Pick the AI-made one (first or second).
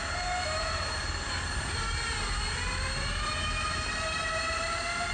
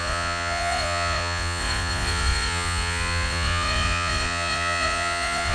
second